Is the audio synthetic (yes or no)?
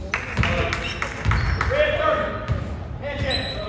no